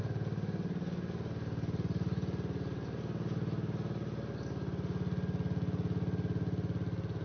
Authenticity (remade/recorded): recorded